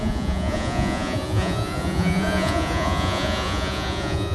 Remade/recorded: remade